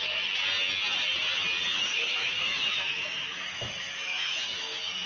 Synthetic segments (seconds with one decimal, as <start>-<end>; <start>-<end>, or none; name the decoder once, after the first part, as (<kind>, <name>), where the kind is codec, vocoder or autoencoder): 1.7-5.1 (autoencoder, DAC-VAE)

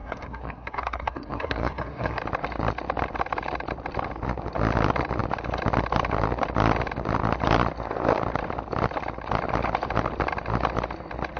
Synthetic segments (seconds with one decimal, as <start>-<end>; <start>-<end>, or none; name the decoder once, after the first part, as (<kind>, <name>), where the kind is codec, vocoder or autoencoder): 0.0-2.2 (codec, SNAC)

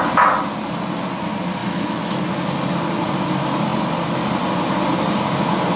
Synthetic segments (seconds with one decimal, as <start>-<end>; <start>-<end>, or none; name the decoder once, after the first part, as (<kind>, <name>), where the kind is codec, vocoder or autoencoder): 1.6-2.2 (autoencoder, DAC-VAE)

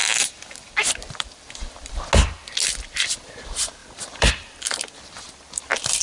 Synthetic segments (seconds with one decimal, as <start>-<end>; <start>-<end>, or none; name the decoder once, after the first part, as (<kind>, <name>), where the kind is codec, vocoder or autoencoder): 0.0-1.9 (vocoder, BigVGAN v2); 3.8-4.3

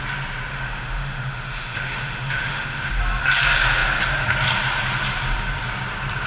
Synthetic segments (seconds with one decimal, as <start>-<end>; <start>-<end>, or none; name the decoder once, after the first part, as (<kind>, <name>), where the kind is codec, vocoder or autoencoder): 0.5-2.9 (autoencoder, DAC-VAE)

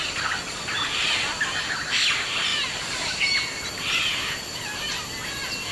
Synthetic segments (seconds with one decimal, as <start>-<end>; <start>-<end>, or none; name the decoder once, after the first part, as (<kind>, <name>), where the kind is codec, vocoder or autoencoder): 2.5-5.1 (vocoder, BigVGAN v2)

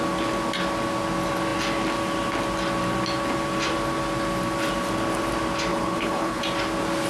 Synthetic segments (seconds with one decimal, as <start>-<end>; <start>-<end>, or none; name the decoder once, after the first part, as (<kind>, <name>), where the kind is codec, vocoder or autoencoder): 5.7-6.4 (codec, HILCodec)

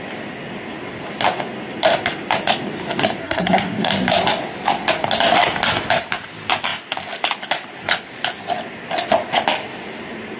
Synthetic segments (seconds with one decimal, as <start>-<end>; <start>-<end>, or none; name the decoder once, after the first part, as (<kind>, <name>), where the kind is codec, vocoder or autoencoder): 3.2-3.9 (codec, SNAC)